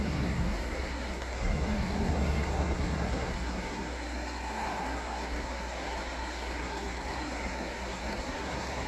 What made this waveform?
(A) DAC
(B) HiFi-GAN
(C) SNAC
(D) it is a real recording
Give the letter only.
C